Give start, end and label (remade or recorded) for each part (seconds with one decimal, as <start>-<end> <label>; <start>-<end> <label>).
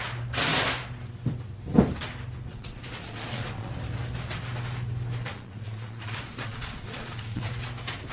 0.0-2.5 recorded; 2.5-3.7 remade; 3.7-5.2 recorded; 5.2-7.5 remade; 7.5-8.1 recorded